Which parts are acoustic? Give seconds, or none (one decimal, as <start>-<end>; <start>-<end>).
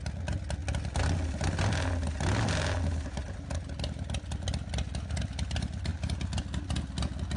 0.0-7.4